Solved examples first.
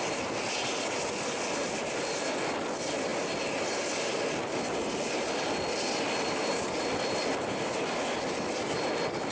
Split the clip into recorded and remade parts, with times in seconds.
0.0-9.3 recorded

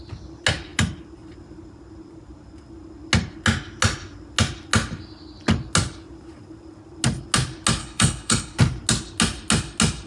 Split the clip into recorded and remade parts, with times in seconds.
0.0-7.8 recorded; 7.8-8.6 remade; 8.6-10.1 recorded

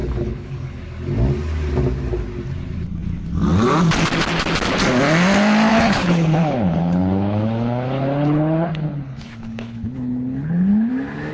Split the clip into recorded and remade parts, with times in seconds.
0.0-0.8 remade; 0.8-5.7 recorded; 5.7-10.9 remade; 10.9-11.3 recorded

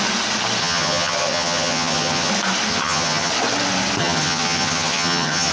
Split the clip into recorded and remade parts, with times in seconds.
0.0-0.6 recorded; 0.6-2.3 remade; 2.3-2.7 recorded; 2.7-3.3 remade; 3.3-4.0 recorded; 4.0-5.5 remade

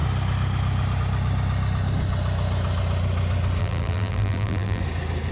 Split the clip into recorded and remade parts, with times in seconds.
0.0-3.6 recorded; 3.6-4.8 remade; 4.8-5.3 recorded